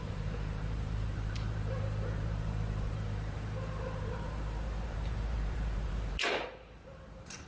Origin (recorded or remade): remade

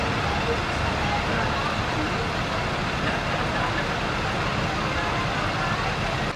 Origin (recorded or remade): recorded